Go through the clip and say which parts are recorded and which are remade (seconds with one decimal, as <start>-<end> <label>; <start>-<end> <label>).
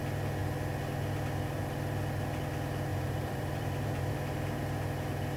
0.0-2.9 recorded; 2.9-4.1 remade; 4.1-5.4 recorded